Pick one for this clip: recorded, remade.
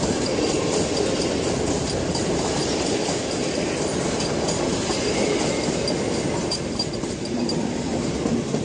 recorded